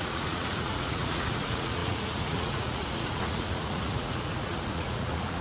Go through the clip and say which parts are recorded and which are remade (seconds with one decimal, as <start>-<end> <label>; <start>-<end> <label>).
0.0-5.4 remade